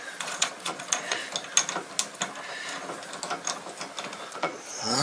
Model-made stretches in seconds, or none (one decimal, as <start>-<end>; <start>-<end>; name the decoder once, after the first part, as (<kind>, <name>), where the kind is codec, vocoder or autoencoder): 0.0-1.2 (vocoder, Vocos); 4.2-5.0